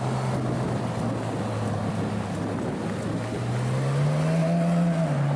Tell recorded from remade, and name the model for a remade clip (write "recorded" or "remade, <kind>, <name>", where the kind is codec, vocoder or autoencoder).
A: recorded